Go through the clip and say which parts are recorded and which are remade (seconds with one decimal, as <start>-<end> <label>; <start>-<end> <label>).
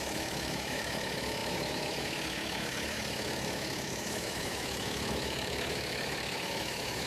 0.0-7.1 remade